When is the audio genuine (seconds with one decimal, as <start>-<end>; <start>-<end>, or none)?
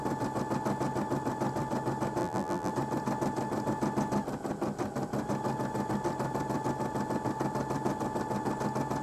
0.0-2.2; 2.7-9.0